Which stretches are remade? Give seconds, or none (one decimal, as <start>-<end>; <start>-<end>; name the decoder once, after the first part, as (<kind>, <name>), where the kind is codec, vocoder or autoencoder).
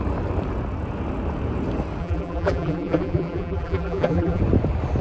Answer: 2.0-4.4 (vocoder, BigVGAN v2)